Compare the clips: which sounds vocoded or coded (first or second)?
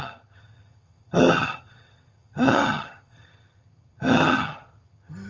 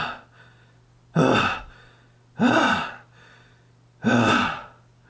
first